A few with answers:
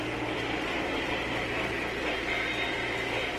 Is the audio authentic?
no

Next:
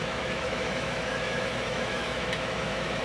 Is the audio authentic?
no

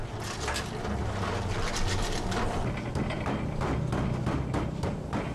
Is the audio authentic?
yes